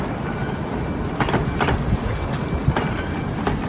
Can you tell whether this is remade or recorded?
recorded